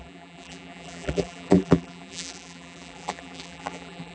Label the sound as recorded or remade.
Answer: remade